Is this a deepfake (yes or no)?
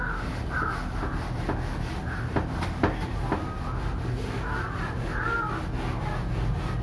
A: no